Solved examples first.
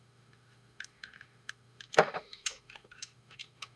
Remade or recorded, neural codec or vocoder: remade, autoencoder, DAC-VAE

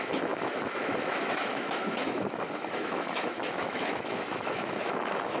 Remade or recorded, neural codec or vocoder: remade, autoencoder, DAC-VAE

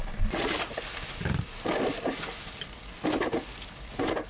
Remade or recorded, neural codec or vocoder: recorded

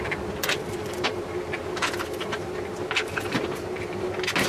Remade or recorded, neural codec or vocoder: recorded